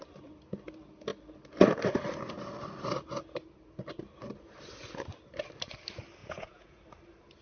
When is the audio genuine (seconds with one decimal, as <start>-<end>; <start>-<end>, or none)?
0.0-6.2; 6.8-7.4